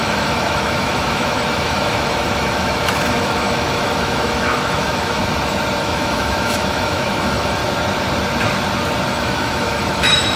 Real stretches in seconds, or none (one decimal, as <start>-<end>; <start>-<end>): 5.2-5.8; 7.6-9.1